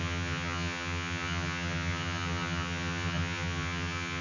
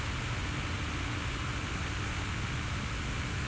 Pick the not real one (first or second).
first